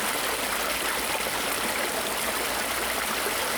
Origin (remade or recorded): recorded